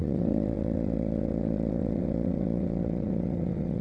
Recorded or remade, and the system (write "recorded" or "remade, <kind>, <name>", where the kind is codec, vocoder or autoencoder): remade, vocoder, WaveNeXt